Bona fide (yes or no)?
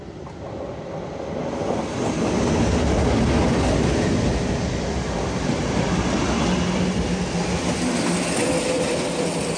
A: yes